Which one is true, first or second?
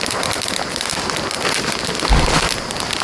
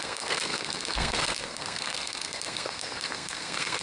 first